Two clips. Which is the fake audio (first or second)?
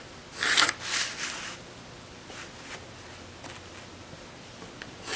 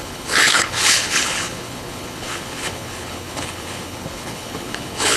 second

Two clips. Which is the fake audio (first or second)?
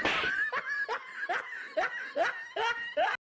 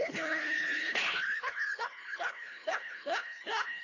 second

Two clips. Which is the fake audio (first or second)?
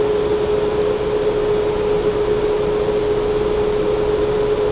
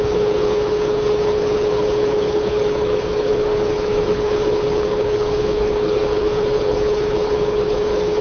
second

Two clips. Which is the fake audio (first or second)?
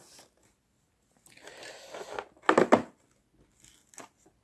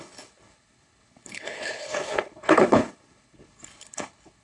second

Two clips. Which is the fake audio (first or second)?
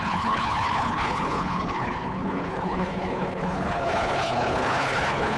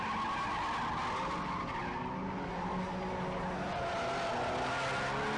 first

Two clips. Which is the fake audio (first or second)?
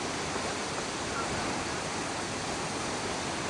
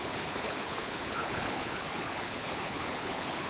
second